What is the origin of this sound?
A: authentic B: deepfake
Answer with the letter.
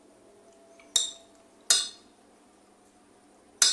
A